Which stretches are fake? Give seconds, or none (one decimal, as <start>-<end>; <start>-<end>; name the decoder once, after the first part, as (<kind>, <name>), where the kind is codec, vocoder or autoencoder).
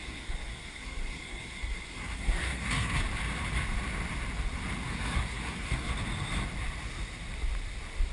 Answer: 0.0-3.0 (codec, SNAC); 4.9-5.9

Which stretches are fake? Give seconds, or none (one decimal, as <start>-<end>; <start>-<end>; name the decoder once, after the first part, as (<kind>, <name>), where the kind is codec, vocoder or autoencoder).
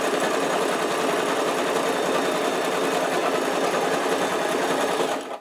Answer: none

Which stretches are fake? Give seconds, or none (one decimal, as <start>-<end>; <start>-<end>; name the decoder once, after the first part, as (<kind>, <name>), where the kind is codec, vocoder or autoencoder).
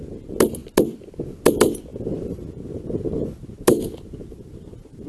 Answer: none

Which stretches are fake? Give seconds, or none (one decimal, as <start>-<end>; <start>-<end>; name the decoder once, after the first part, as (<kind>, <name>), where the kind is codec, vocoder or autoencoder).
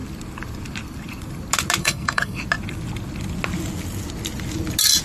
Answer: 1.8-2.4 (codec, SNAC)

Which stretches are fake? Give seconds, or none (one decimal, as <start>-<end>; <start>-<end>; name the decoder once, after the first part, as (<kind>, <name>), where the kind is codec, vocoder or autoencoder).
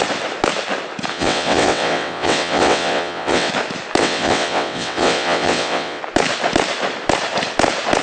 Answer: 1.1-3.5 (vocoder, WaveNeXt); 4.0-6.0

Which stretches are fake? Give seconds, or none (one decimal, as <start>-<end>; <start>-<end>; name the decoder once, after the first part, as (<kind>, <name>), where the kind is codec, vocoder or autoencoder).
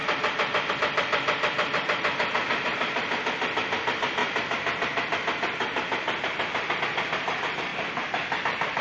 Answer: 0.0-4.2 (vocoder, BigVGAN v2); 6.8-7.7; 8.4-8.8